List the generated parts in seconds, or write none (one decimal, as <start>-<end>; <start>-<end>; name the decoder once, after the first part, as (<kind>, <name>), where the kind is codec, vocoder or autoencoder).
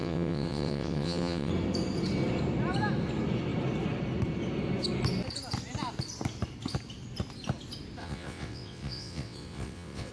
0.0-1.5 (vocoder, WaveNeXt); 8.0-10.1